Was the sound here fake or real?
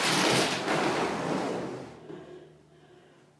real